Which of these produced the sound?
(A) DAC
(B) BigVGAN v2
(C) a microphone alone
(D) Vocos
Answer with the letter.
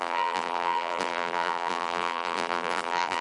B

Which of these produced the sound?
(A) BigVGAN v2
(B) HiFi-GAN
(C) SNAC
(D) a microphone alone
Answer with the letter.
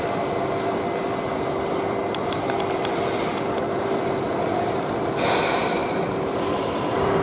A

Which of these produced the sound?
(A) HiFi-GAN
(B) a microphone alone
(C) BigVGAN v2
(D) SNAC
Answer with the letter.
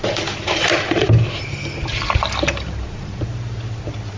C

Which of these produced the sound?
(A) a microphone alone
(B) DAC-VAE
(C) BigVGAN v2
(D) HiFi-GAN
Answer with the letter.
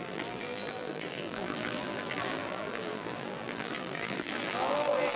C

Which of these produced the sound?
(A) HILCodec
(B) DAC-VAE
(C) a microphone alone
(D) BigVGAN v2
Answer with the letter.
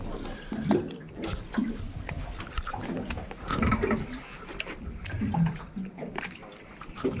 D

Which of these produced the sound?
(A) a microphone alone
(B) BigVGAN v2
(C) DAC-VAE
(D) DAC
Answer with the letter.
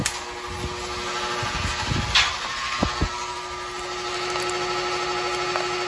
A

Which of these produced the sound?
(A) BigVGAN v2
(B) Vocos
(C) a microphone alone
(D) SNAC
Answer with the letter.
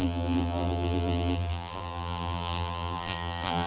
A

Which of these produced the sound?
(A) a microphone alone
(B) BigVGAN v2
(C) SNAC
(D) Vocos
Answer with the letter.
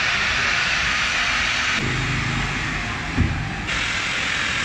A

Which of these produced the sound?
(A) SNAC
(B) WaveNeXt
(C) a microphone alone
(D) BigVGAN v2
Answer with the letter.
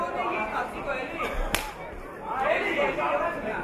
C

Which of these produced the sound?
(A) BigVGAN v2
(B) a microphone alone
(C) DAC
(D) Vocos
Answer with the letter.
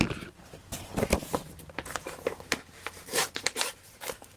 A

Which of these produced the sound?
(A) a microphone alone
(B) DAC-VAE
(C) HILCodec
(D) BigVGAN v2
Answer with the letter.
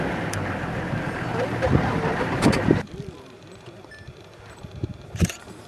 D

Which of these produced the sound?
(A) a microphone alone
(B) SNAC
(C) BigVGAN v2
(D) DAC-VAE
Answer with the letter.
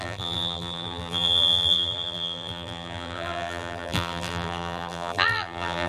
C